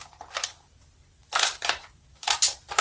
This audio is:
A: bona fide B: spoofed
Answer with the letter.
B